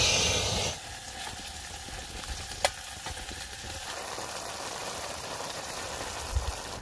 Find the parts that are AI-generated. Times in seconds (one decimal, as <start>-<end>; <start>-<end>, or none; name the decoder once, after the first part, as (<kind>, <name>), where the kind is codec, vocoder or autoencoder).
4.8-5.8 (vocoder, BigVGAN v2)